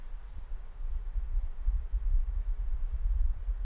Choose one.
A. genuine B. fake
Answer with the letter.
B